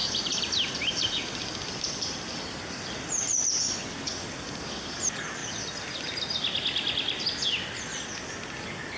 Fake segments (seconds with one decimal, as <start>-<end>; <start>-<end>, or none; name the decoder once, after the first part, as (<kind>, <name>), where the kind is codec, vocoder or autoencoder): 0.0-3.6 (vocoder, BigVGAN v2)